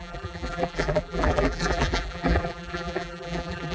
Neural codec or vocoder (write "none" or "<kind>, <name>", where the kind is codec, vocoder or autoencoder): vocoder, BigVGAN v2